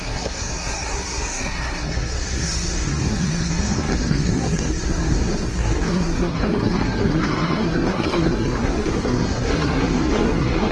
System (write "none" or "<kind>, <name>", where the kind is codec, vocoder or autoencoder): codec, SNAC